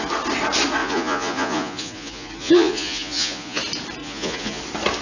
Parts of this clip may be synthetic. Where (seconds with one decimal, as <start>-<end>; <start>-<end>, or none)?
0.8-3.6; 4.0-4.6